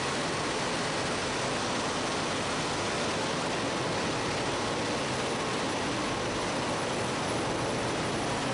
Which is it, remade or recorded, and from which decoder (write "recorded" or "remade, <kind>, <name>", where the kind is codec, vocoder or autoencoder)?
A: recorded